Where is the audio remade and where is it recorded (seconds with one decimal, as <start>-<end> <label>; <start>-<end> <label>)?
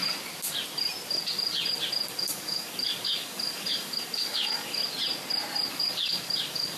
0.0-2.1 recorded; 2.1-4.8 remade; 4.8-5.7 recorded; 5.7-6.8 remade